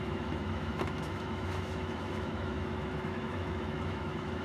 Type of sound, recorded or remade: remade